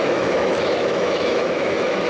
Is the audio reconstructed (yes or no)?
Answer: yes